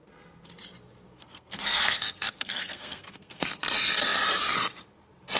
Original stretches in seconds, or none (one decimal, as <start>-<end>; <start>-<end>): 0.0-1.2; 3.6-5.4

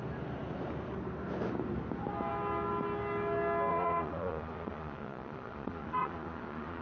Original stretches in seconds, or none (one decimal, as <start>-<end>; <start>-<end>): 0.0-3.7

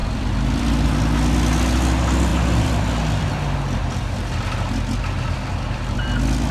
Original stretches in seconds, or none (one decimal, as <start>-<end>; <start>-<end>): 0.6-2.3

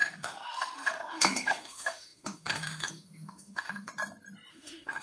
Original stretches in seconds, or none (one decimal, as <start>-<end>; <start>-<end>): 3.9-4.5

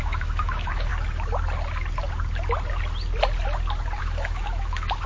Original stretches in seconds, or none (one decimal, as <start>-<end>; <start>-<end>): 0.9-4.0

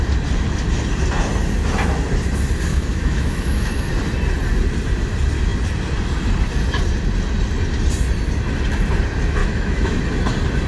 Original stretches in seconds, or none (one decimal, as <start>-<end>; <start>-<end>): 0.0-2.7; 3.9-9.4; 10.0-10.7

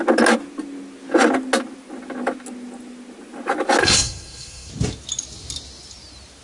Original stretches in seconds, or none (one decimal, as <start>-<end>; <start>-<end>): 0.0-3.8; 4.7-6.4